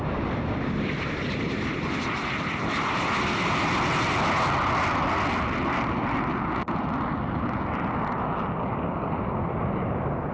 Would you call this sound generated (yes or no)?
no